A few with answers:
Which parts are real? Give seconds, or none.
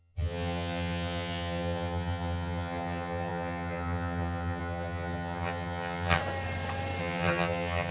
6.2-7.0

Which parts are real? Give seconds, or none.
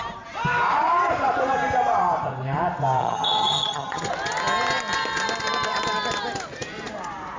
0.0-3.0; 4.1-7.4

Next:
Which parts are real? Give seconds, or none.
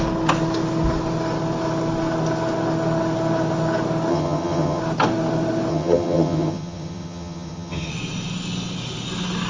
0.0-4.1; 4.8-5.7; 7.9-9.5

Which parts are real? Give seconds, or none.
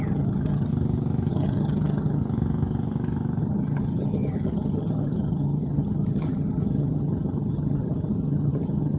0.7-1.3; 2.2-3.4